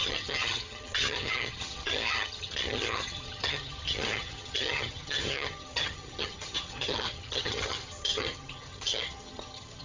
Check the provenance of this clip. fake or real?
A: fake